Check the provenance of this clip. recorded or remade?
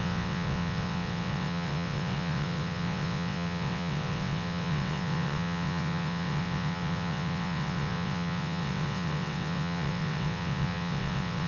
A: remade